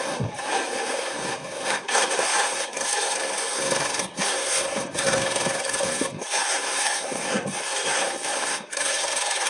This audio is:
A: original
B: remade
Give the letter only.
B